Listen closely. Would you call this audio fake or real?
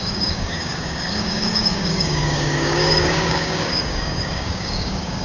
fake